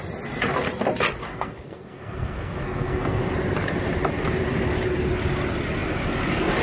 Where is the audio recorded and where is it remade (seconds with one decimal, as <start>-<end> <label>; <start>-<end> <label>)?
0.0-1.2 recorded; 1.2-3.2 remade; 3.2-6.6 recorded